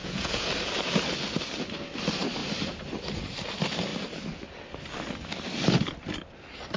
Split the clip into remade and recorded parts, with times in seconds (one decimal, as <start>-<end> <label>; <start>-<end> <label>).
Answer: 0.0-0.5 remade; 0.5-6.8 recorded